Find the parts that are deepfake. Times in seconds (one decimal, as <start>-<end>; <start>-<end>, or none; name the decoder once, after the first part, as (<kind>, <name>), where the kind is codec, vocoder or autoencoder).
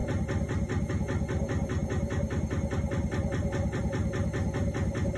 none